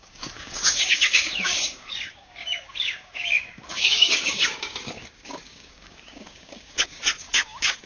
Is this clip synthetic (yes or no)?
yes